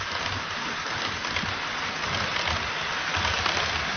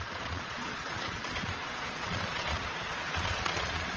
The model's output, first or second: second